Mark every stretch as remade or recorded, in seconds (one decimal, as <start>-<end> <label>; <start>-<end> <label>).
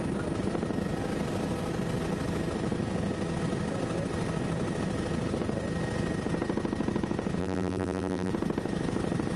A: 0.0-7.4 recorded; 7.4-8.3 remade; 8.3-9.4 recorded